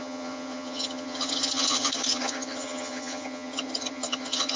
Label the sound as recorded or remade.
remade